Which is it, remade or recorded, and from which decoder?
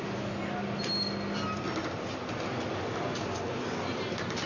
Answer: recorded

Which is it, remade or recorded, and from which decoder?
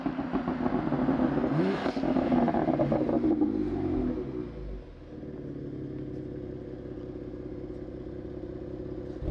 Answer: recorded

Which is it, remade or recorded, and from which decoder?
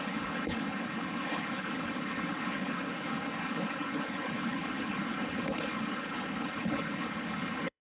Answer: remade, codec, HILCodec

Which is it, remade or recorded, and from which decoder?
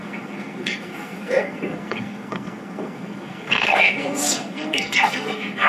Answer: remade, codec, SNAC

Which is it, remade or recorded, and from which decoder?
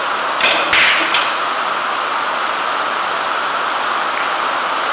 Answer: recorded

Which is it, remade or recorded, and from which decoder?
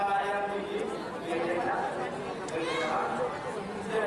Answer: recorded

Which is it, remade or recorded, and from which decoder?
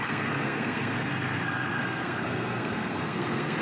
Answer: remade, codec, SNAC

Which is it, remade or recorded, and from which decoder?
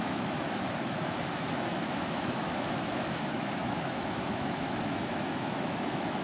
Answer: remade, autoencoder, DAC-VAE